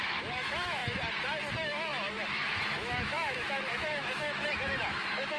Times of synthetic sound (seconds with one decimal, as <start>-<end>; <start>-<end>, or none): 0.0-0.8; 1.5-5.4